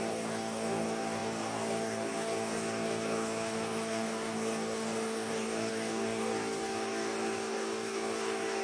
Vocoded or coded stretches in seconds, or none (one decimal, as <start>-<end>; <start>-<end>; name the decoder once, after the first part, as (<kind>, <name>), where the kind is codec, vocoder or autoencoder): 0.0-8.6 (codec, DAC)